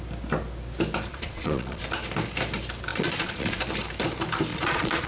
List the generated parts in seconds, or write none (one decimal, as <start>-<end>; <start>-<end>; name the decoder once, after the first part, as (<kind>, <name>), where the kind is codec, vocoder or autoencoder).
1.1-1.8 (vocoder, Vocos); 2.9-3.6; 4.5-5.1